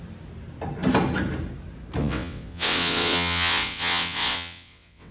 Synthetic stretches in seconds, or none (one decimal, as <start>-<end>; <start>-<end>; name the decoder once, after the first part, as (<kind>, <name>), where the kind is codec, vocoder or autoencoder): 2.0-5.1 (vocoder, WaveNeXt)